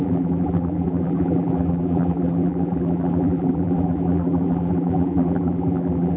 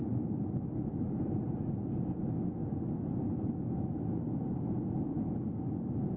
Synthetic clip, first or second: first